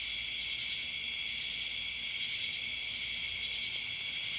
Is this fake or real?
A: real